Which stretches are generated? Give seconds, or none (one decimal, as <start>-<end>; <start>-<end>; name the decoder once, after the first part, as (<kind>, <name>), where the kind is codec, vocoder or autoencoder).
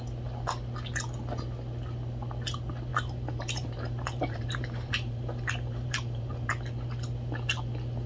2.9-6.5 (vocoder, BigVGAN v2)